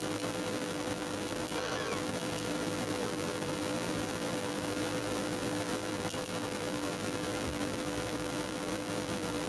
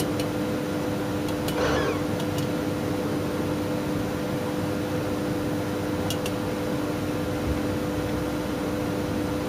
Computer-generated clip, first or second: first